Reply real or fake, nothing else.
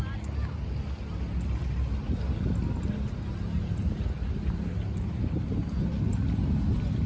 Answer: real